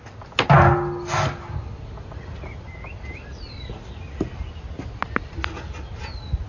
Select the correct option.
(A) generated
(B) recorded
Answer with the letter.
B